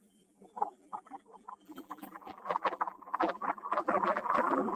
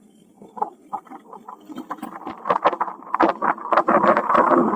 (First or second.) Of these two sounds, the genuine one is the second